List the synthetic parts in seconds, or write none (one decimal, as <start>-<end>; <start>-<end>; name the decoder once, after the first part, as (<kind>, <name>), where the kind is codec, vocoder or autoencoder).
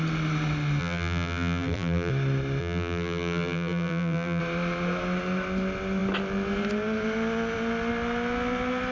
0.8-2.1 (vocoder, BigVGAN v2); 2.6-4.4